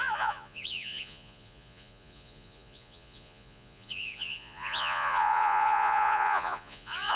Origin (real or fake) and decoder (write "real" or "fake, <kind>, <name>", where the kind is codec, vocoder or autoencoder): fake, vocoder, Vocos